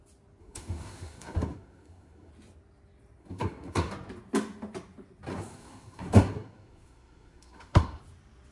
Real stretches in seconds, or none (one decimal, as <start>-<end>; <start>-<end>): 0.0-0.4; 2.3-3.2; 3.9-5.3; 8.0-8.5